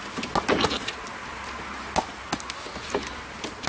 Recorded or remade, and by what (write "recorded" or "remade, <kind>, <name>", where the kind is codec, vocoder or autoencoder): recorded